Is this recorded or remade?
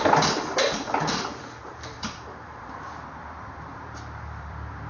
remade